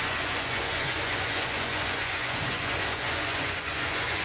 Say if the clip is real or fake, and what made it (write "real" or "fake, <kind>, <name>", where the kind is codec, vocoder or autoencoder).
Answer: fake, vocoder, Vocos